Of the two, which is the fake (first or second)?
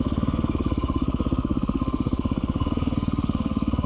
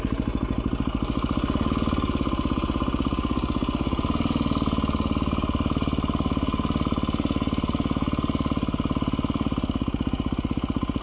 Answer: first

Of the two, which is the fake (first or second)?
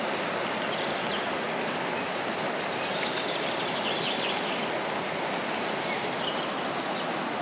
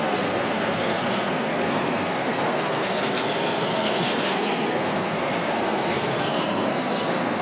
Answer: second